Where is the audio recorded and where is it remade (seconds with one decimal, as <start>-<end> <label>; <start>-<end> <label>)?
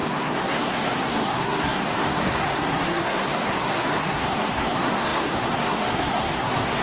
0.0-6.8 remade